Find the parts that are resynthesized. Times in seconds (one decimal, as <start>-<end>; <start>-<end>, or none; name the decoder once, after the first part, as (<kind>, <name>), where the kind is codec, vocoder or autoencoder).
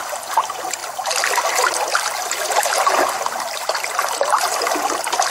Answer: none